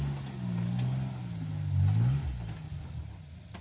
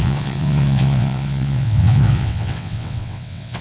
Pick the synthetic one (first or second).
second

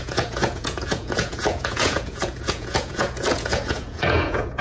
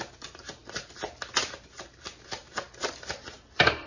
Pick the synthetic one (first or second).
first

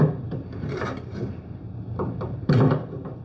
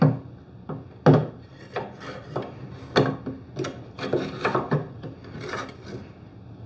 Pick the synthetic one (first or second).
first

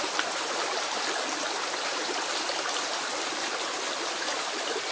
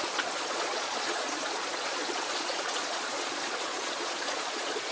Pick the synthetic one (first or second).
second